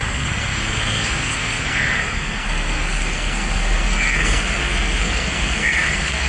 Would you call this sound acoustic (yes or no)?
no